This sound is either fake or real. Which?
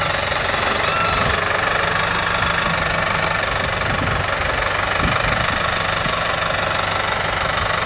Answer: real